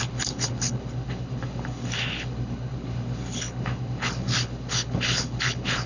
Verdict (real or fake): fake